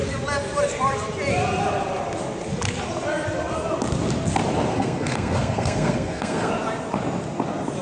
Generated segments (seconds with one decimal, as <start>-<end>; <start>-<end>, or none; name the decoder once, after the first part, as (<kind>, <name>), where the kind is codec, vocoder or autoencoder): 4.7-6.5 (codec, SNAC)